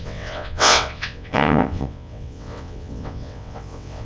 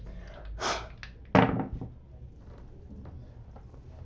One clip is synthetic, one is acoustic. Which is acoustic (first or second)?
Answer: second